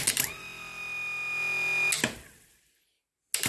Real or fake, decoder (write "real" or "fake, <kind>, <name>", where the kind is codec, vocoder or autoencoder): real